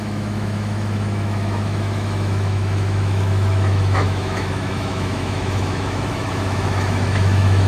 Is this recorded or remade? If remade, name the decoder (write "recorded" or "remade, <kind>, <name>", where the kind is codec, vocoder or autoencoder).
remade, autoencoder, DAC-VAE